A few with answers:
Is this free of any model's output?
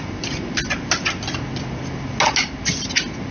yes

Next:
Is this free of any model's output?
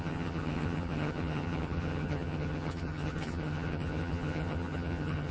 no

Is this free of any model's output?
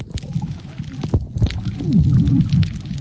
yes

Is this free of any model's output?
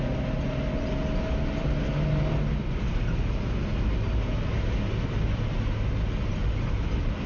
yes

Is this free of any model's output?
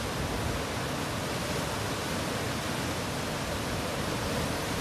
yes